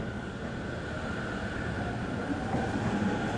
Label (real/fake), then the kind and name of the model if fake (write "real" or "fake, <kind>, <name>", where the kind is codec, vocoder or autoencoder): real